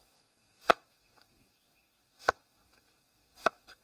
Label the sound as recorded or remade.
remade